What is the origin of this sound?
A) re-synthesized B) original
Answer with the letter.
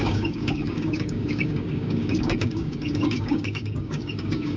A